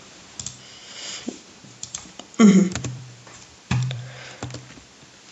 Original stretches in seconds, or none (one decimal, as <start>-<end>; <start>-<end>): 0.0-0.8; 4.0-5.3